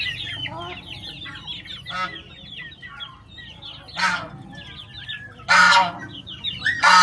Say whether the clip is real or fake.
real